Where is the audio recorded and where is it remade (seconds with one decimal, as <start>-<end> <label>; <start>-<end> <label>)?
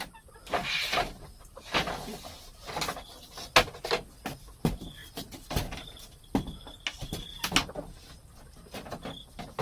0.0-5.0 recorded; 5.0-6.2 remade; 6.2-9.6 recorded